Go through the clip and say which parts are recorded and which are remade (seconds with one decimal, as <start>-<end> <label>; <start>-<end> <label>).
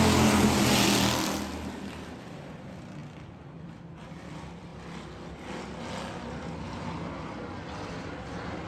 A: 0.0-8.7 recorded